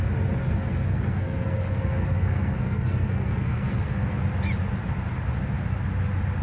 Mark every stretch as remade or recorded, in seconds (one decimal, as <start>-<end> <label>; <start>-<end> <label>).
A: 0.0-0.4 recorded; 0.4-4.2 remade; 4.2-6.4 recorded